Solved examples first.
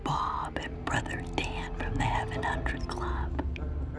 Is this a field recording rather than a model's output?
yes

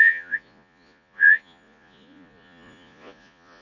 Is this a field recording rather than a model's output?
no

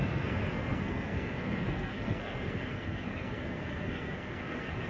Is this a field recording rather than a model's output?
no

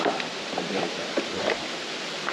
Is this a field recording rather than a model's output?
no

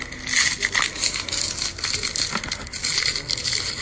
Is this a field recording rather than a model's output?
yes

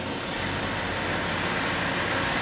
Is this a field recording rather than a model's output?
yes